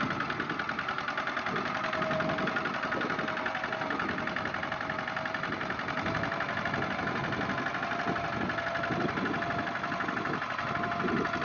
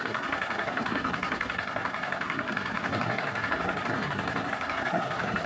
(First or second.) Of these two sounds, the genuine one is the first